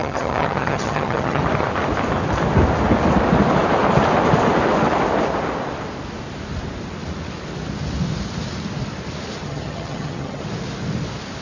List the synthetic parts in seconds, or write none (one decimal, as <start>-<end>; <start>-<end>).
0.0-1.4; 9.4-10.4